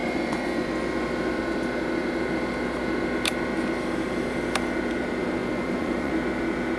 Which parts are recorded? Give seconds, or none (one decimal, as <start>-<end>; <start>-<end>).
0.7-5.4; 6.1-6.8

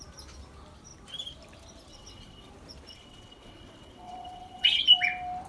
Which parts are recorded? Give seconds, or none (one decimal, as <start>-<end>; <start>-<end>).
0.0-1.9; 2.5-2.9; 4.8-5.5

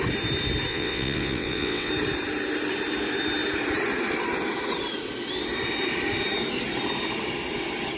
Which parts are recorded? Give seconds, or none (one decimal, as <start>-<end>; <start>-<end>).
0.0-0.7; 1.9-8.0

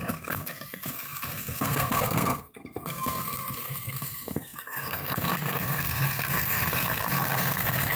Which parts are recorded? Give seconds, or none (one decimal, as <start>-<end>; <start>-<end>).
none

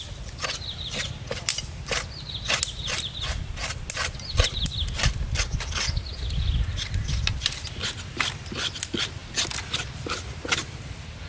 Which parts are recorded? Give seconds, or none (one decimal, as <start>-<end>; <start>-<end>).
0.0-11.3

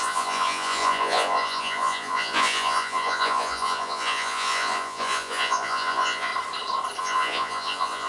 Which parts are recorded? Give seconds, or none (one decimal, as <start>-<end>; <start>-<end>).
6.3-7.0

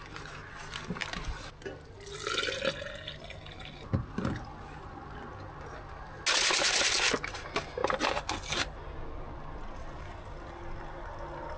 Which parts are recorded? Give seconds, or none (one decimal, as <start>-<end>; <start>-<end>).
0.0-11.6

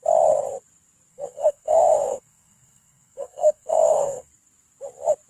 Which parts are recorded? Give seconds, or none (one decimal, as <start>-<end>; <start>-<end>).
0.0-1.1; 4.3-5.3